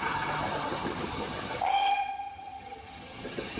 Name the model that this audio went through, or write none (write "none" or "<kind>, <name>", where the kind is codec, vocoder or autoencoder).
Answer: vocoder, HiFi-GAN